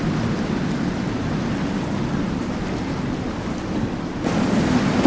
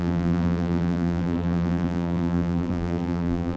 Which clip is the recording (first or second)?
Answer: first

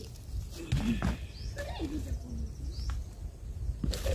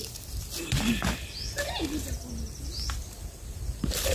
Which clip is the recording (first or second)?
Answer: first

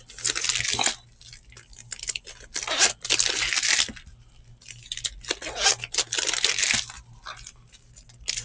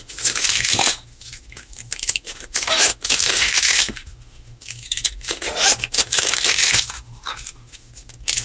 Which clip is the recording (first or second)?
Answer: first